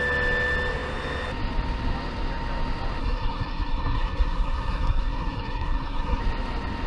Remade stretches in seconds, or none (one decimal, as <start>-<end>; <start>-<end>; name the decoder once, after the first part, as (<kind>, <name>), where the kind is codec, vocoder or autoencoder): 3.0-6.2 (codec, SNAC)